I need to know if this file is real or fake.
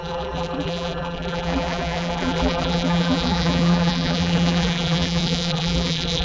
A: fake